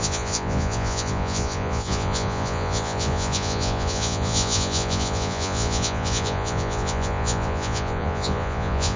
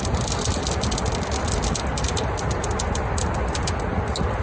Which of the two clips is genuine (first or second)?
second